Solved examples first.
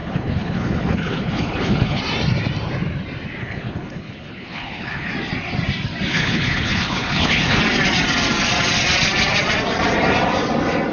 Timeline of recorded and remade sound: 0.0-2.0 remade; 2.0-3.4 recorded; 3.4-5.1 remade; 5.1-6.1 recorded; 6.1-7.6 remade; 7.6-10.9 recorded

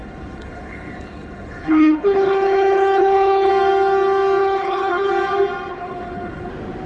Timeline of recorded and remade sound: 0.0-3.5 remade; 3.5-4.4 recorded; 4.4-5.1 remade; 5.1-5.7 recorded; 5.7-6.5 remade; 6.5-6.9 recorded

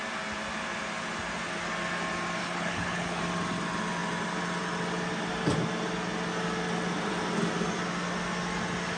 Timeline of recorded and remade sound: 0.0-2.4 recorded; 2.4-3.2 remade; 3.2-9.0 recorded